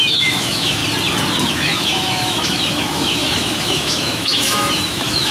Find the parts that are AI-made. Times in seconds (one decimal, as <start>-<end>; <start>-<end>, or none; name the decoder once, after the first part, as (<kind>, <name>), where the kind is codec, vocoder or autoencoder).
0.0-0.8 (autoencoder, DAC-VAE); 1.5-5.3